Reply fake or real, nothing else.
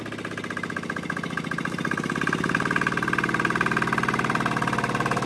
real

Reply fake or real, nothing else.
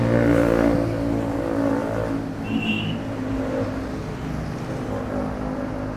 real